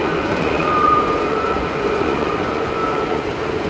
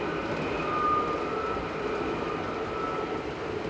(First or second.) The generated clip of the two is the first